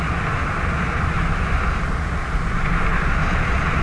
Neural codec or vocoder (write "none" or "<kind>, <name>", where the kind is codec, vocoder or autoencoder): none